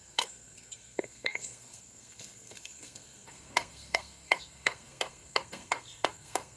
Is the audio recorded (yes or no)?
no